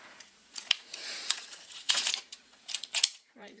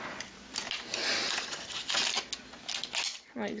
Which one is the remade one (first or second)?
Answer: first